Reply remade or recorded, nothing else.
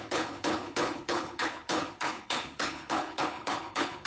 remade